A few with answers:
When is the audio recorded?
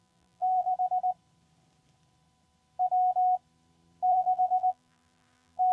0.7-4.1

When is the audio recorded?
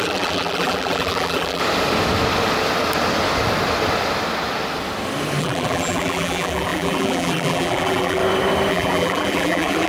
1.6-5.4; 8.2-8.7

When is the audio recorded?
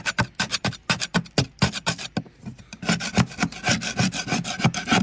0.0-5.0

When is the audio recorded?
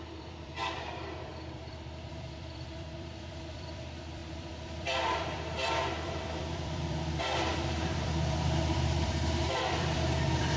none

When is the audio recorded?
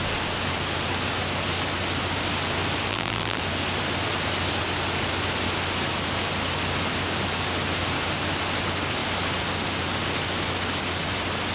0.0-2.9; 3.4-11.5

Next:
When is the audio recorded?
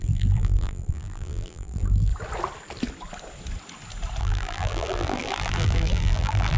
2.1-4.2